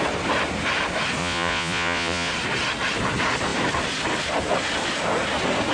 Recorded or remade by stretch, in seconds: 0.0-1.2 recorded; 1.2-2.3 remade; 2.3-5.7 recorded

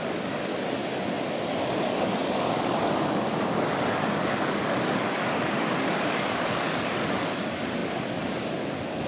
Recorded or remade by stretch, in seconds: 0.0-0.5 remade; 0.5-1.6 recorded; 1.6-9.1 remade

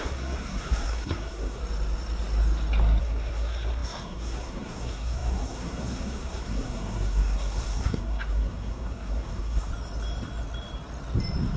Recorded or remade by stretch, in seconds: 0.0-1.6 remade; 1.6-3.0 recorded; 3.0-9.7 remade; 9.7-11.6 recorded

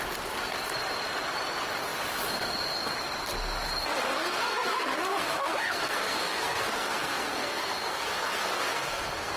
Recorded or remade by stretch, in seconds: 0.0-4.1 recorded; 4.1-9.4 remade

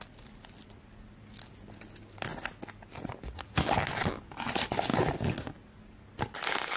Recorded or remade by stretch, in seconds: 0.0-6.8 recorded

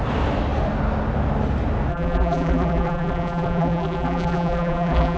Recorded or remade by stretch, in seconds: 0.0-1.9 recorded; 1.9-5.2 remade